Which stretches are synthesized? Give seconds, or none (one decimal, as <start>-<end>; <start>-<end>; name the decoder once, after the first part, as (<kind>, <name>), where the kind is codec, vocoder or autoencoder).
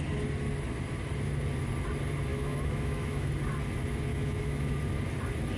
2.3-3.3 (autoencoder, DAC-VAE); 4.1-4.7